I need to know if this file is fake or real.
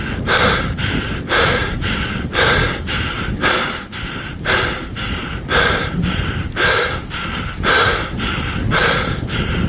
fake